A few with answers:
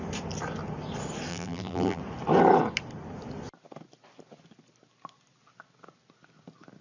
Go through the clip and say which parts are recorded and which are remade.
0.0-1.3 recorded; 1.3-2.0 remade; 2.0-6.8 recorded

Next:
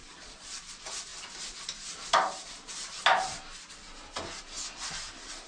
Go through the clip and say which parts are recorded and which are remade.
0.0-0.6 remade; 0.6-5.5 recorded

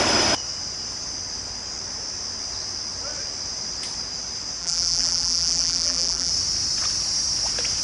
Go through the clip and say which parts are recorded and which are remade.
0.0-4.6 recorded; 4.6-6.3 remade; 6.3-7.8 recorded

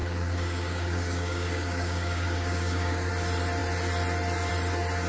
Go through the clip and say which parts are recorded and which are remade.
0.0-3.1 remade; 3.1-5.1 recorded

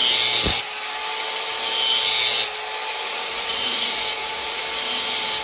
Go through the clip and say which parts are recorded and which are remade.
0.0-2.9 recorded; 2.9-4.6 remade; 4.6-5.4 recorded

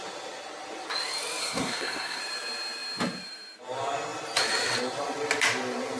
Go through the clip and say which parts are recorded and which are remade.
0.0-1.4 recorded; 1.4-2.2 remade; 2.2-6.0 recorded